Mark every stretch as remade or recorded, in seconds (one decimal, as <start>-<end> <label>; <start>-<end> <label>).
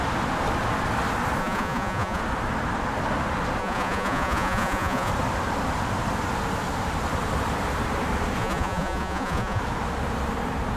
0.0-1.4 recorded; 1.4-2.2 remade; 2.2-3.6 recorded; 3.6-5.1 remade; 5.1-8.4 recorded; 8.4-9.6 remade; 9.6-10.8 recorded